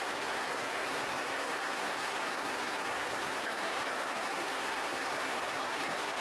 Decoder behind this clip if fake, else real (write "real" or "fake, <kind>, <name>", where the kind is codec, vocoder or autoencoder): fake, codec, SNAC